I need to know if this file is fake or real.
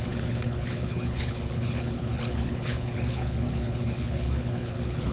fake